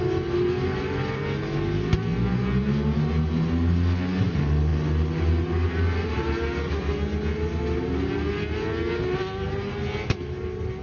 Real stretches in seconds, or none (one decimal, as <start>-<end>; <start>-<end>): 0.0-10.8